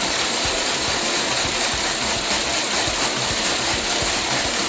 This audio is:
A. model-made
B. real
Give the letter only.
A